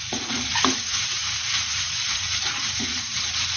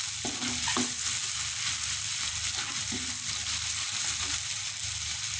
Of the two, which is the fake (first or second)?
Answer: first